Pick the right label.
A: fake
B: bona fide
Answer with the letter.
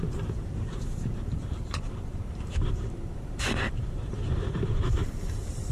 A